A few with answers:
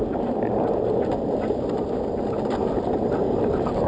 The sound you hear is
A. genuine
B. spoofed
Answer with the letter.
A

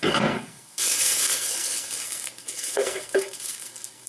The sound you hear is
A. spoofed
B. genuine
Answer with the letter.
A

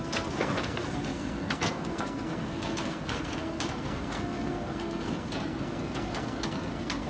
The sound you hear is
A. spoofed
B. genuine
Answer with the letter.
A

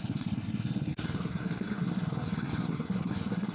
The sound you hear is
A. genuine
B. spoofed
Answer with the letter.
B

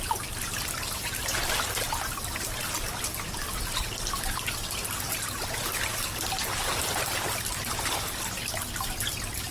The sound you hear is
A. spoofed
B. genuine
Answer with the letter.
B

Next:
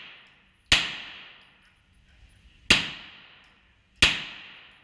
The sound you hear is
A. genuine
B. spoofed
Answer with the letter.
A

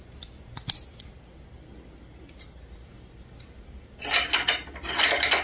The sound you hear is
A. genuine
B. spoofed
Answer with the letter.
A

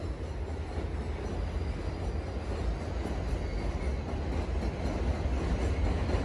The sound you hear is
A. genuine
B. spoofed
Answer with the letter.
A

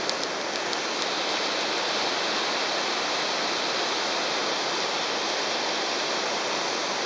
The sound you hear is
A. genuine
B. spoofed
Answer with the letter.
A